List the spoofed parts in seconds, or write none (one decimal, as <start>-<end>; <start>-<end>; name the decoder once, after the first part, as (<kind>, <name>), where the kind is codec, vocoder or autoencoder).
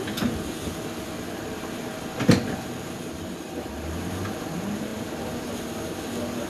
none